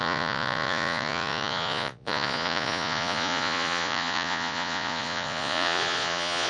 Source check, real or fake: fake